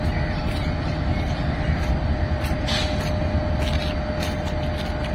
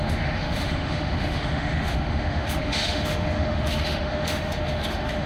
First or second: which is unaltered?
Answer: first